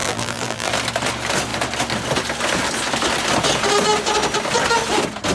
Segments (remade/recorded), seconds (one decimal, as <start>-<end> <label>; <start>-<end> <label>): 0.0-0.7 remade; 0.7-5.3 recorded